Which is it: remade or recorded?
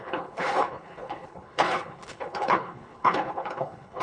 remade